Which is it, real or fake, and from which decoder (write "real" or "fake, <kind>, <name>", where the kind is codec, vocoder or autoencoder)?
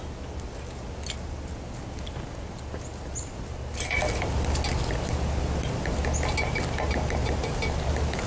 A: real